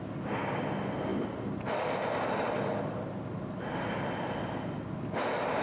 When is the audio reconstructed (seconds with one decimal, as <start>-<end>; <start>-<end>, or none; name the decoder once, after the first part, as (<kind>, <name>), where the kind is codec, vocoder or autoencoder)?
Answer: none